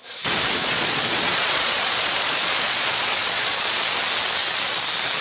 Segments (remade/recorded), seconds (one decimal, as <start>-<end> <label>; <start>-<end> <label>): 0.0-0.6 recorded; 0.6-3.7 remade; 3.7-5.2 recorded